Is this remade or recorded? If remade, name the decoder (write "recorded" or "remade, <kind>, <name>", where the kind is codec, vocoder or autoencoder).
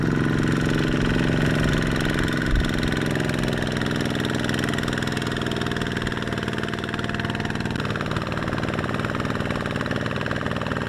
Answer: recorded